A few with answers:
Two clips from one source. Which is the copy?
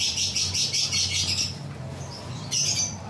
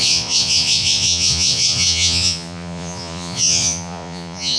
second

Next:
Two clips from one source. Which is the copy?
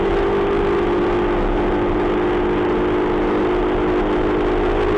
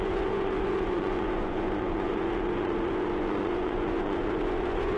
second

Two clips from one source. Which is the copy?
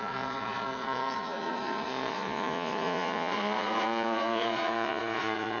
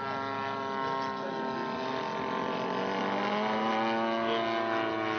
first